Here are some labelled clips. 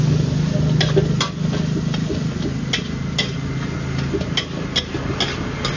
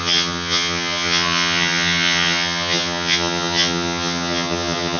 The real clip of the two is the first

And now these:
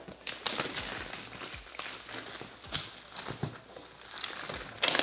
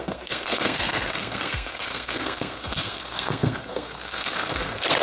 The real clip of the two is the first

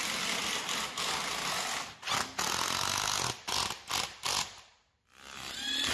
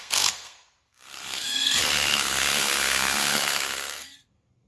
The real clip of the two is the first